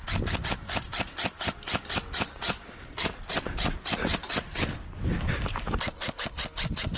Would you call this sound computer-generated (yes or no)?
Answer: no